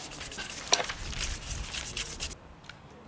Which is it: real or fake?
real